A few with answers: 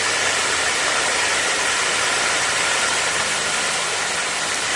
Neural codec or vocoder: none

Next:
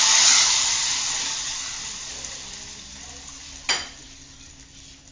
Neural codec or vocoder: none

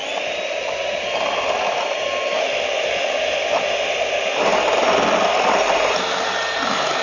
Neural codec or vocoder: none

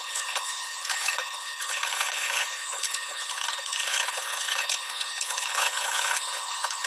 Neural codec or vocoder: codec, HILCodec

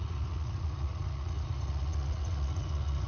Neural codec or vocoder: vocoder, Vocos